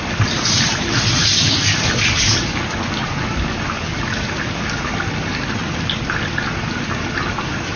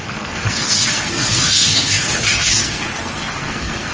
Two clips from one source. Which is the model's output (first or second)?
second